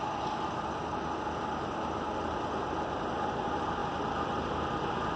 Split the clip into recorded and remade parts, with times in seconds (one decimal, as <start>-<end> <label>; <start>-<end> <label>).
0.0-5.2 recorded